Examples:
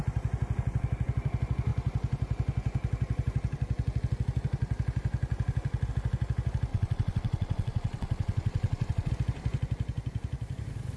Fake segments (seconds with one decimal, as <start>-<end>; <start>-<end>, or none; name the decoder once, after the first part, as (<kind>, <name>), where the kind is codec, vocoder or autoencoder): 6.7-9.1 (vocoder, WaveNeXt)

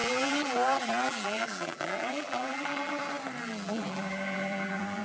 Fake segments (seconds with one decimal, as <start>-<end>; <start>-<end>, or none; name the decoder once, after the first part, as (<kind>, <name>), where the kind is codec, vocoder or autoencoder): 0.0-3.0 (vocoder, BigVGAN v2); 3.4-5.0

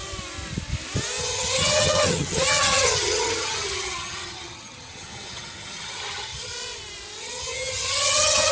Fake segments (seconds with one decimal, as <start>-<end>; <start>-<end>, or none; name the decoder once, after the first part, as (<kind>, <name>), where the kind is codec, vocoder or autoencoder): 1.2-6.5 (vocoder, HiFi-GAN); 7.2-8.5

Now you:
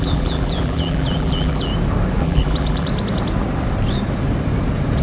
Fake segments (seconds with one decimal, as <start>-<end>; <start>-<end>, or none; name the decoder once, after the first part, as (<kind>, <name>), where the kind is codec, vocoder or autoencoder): 0.0-1.7 (vocoder, BigVGAN v2); 2.2-2.9